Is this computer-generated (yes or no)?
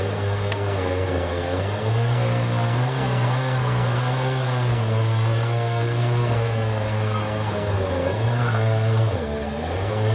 yes